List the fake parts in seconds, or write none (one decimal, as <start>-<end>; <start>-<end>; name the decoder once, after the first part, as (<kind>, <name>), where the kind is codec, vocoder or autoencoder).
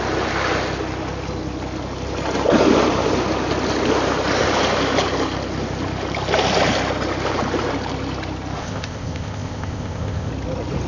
8.6-10.3 (codec, ZipCodec)